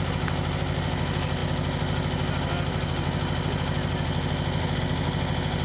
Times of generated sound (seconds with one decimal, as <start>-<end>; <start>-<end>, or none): none